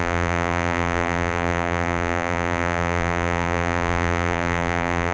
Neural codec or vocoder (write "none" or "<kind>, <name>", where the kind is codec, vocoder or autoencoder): vocoder, BigVGAN v2